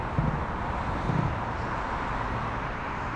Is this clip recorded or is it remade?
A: recorded